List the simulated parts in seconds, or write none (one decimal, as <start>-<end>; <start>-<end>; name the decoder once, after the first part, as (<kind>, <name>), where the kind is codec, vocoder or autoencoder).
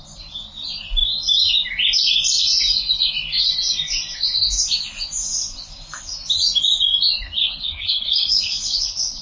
7.4-9.2 (codec, HILCodec)